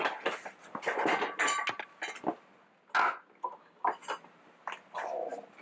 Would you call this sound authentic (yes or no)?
yes